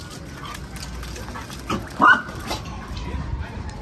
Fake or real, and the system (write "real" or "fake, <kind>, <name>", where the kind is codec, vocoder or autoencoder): real